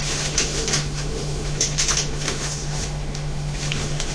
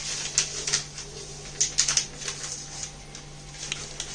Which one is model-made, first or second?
first